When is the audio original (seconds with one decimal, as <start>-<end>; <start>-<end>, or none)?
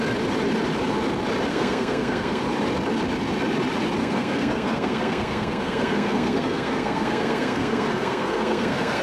0.0-1.5; 2.4-4.0